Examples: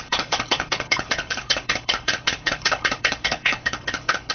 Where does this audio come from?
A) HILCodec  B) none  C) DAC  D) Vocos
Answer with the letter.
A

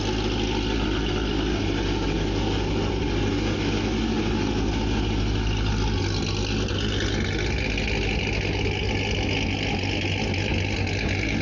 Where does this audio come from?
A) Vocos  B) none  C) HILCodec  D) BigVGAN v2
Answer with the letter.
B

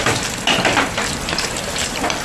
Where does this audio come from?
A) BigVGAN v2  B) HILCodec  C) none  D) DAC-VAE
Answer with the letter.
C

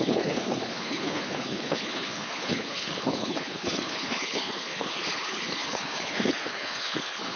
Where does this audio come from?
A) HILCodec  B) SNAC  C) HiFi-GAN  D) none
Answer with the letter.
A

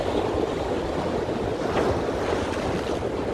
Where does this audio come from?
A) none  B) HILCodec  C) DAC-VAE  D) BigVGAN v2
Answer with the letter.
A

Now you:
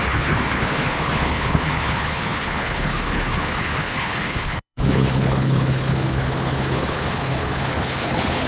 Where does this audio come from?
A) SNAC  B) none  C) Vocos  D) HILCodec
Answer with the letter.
D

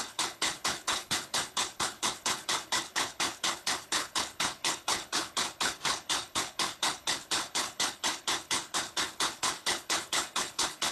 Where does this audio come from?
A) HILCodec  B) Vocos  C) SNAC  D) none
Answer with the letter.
A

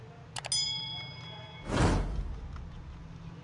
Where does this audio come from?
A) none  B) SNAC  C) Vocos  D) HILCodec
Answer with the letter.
A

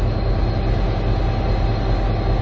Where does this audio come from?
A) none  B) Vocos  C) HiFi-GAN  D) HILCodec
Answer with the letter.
A